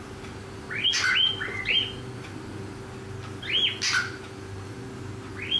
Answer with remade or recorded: recorded